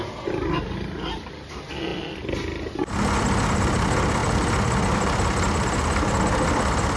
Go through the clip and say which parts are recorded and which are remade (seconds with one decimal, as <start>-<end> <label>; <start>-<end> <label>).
0.0-7.0 recorded